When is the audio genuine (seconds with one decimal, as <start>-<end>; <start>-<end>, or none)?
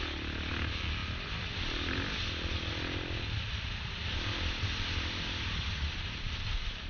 0.0-1.0; 3.4-4.0; 4.9-6.9